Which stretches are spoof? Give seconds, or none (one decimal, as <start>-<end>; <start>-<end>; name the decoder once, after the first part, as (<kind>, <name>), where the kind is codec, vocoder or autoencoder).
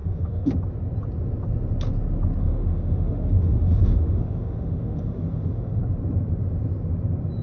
0.0-0.5 (autoencoder, DAC-VAE); 2.4-5.8